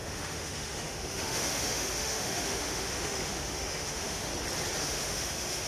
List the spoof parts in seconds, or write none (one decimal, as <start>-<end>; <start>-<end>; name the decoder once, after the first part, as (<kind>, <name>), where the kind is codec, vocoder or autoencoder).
0.0-4.3 (autoencoder, DAC-VAE); 4.8-5.7